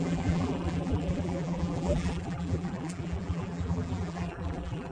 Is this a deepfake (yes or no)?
yes